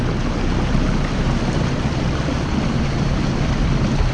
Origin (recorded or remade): recorded